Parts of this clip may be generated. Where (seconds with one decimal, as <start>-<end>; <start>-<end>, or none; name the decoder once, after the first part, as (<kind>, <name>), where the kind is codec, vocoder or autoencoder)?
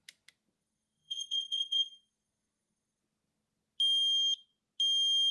0.6-3.0 (codec, SNAC)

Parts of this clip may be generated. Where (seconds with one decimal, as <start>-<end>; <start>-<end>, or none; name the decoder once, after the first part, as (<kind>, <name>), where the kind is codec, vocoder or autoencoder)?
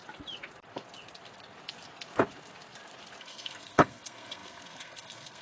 3.2-5.4 (codec, SNAC)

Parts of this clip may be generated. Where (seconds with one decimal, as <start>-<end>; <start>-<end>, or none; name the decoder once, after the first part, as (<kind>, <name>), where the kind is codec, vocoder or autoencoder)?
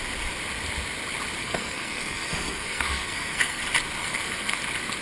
1.4-3.6 (codec, SNAC); 4.0-4.6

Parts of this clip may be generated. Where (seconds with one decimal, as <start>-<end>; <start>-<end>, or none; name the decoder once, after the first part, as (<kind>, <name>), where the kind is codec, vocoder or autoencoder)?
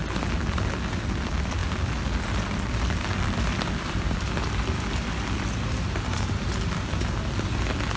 none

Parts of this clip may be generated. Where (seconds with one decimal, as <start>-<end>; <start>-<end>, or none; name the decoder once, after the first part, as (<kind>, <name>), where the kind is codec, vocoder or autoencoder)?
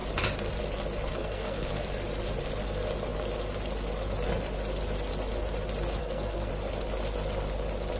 1.1-1.7 (codec, SNAC); 6.0-6.5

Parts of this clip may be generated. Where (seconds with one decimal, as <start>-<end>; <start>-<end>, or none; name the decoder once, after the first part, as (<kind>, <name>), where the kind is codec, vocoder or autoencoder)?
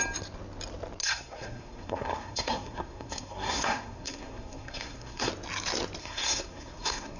1.0-5.3 (codec, SNAC); 6.0-7.2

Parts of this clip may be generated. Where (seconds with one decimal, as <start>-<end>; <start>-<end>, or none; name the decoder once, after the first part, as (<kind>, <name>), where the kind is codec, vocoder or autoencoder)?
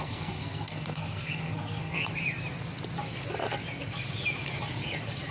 0.0-2.0 (codec, SNAC)